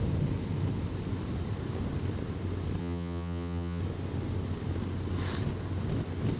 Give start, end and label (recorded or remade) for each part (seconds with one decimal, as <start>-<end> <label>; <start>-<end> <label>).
0.0-2.8 recorded; 2.8-3.8 remade; 3.8-6.4 recorded